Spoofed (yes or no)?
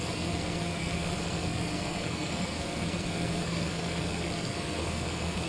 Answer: yes